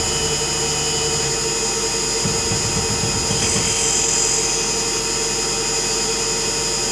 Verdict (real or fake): real